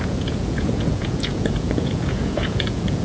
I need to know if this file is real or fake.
fake